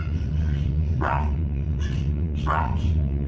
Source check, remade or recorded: remade